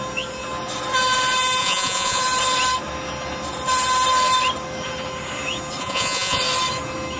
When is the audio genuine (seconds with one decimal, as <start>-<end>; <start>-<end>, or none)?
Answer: 0.0-1.6; 2.2-5.8; 6.4-7.2